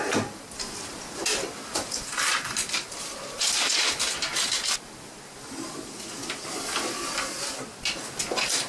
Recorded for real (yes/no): yes